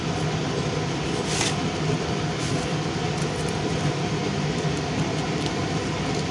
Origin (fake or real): real